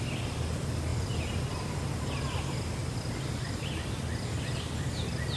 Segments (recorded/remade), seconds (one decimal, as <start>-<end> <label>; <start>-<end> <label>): 0.0-5.4 recorded